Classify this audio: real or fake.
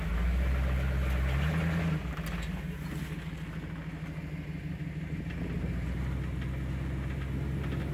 real